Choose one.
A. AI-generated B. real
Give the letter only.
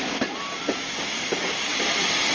B